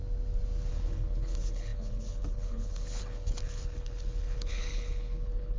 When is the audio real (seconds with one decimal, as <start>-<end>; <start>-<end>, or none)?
0.0-0.7